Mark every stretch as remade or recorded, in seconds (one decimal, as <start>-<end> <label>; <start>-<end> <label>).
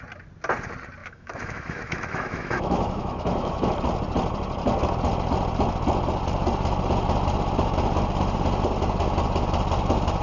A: 0.0-1.0 recorded; 1.0-3.7 remade; 3.7-10.2 recorded